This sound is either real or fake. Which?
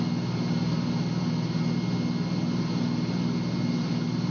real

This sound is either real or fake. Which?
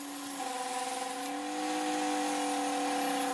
real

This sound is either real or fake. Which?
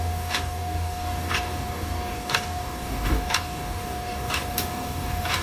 fake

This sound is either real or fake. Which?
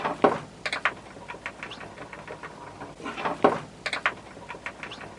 real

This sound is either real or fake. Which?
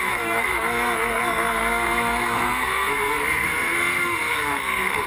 fake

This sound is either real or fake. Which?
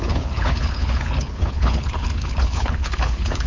fake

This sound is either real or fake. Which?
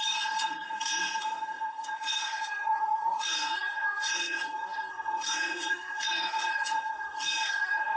fake